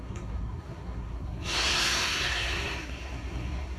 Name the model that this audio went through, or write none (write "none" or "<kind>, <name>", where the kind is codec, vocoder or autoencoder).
codec, SNAC